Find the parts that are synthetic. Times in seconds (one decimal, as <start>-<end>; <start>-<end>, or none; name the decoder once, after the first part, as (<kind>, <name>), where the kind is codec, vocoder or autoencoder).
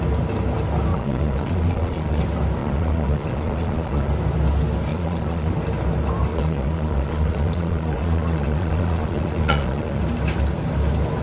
0.9-2.2 (vocoder, Vocos); 2.6-4.1; 4.9-5.5; 6.3-10.0